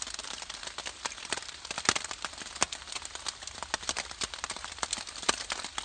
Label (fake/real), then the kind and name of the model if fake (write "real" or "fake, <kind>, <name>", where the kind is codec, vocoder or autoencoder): real